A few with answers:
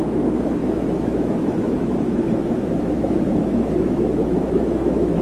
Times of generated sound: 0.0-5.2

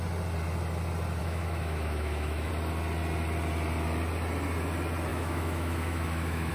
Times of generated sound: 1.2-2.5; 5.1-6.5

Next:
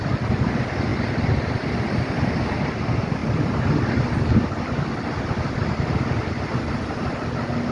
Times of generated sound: none

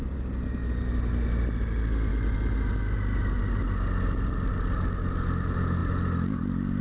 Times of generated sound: 0.6-1.1

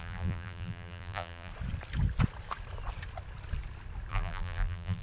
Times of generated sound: 0.0-1.5; 4.1-5.0

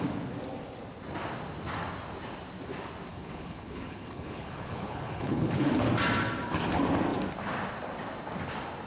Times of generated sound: 3.1-5.7

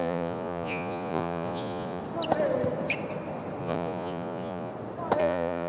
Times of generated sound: 0.0-2.0; 3.6-4.7; 5.2-5.7

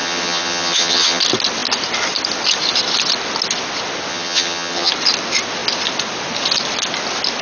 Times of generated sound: 0.0-1.2; 4.1-4.9